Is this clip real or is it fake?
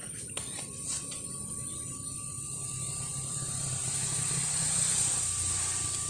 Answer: fake